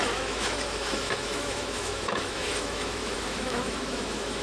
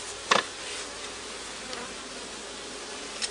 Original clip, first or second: second